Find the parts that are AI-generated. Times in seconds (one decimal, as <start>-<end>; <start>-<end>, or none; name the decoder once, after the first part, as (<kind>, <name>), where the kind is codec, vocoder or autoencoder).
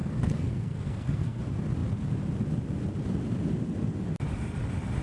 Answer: 0.0-1.4 (codec, SNAC)